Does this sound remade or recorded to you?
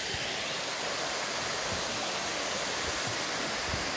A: recorded